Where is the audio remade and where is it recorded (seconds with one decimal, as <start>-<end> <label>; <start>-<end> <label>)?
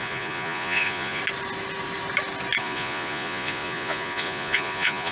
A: 0.0-1.2 remade; 1.2-2.6 recorded; 2.6-5.1 remade